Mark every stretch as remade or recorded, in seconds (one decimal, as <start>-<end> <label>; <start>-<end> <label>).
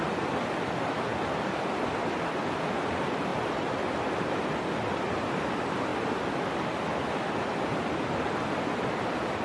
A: 0.0-9.4 recorded